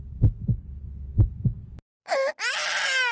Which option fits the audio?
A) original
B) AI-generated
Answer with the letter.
A